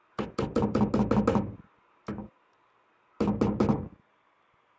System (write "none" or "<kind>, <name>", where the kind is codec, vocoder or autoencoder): none